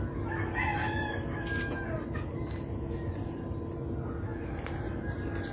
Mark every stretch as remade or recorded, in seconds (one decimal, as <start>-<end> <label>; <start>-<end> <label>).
0.0-4.3 recorded; 4.3-4.9 remade; 4.9-5.5 recorded